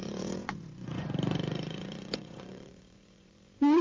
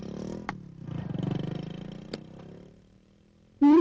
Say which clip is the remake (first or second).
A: first